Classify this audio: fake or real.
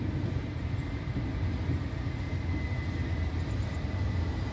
real